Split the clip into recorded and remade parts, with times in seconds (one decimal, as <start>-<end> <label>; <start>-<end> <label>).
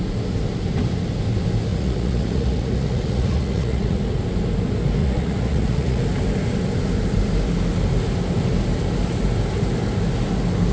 0.0-1.7 recorded; 1.7-4.0 remade; 4.0-5.0 recorded; 5.0-6.0 remade; 6.0-10.7 recorded